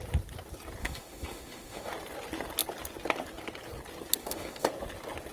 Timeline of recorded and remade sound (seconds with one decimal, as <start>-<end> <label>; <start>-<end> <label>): 0.0-0.8 recorded; 0.8-1.9 remade; 1.9-4.2 recorded; 4.2-4.7 remade; 4.7-5.3 recorded